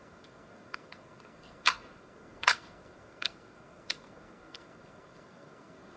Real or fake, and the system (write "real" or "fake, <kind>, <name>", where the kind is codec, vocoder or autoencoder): fake, codec, SNAC